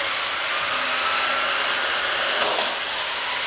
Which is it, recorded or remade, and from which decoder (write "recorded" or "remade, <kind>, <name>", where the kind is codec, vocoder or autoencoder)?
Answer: recorded